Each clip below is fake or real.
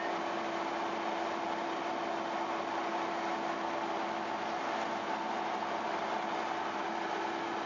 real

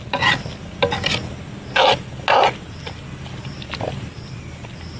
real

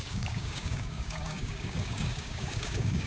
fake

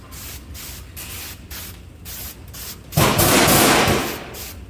real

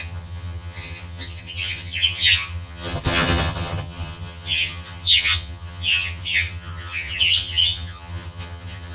fake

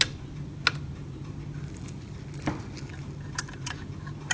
real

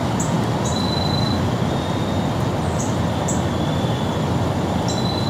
real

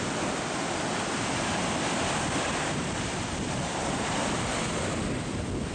real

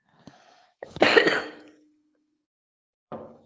fake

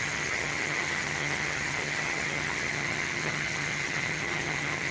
fake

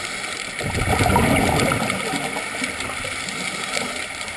real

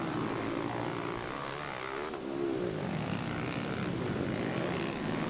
real